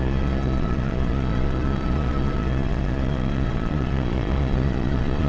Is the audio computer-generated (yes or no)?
yes